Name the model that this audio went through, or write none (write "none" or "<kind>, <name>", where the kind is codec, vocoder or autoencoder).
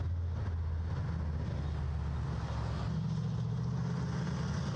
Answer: none